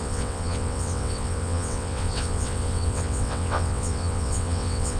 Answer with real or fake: fake